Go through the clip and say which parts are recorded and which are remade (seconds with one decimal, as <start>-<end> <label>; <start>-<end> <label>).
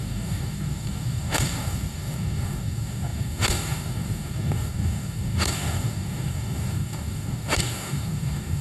0.0-8.6 remade